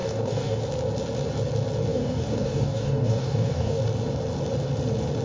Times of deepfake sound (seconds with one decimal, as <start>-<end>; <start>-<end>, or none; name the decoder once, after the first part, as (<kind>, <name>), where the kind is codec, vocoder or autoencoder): 0.0-0.6 (codec, DAC); 1.9-3.8